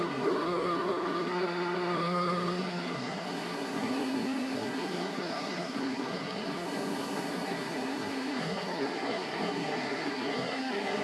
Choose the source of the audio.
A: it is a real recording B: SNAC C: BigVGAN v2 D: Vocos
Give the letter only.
B